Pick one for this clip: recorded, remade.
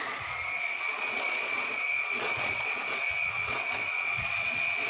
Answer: remade